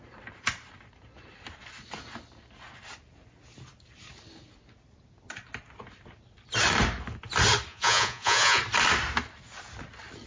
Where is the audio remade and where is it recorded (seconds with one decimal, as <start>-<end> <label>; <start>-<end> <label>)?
0.0-7.7 recorded; 7.7-8.6 remade; 8.6-10.3 recorded